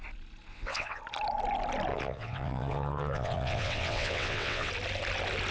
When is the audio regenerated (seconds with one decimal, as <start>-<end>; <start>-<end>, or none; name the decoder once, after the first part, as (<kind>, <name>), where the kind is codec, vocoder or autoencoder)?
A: 0.5-1.0 (vocoder, WaveNeXt); 1.9-4.7